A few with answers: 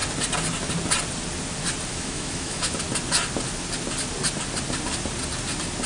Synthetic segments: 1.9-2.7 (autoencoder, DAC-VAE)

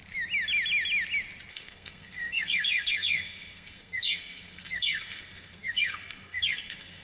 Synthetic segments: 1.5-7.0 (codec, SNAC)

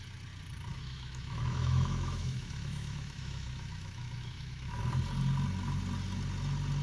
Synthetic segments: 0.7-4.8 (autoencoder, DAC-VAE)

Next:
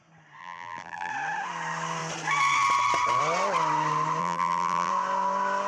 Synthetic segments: 0.4-1.1 (vocoder, BigVGAN v2); 4.2-4.9

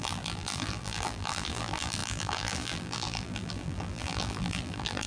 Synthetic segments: 0.0-5.1 (vocoder, BigVGAN v2)

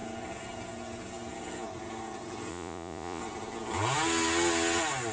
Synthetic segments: 2.5-3.2 (vocoder, Vocos)

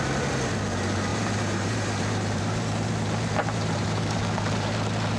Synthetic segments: 1.1-4.2 (vocoder, BigVGAN v2)

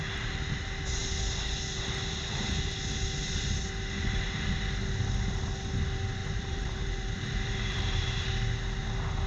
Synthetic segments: 6.2-8.3 (vocoder, BigVGAN v2)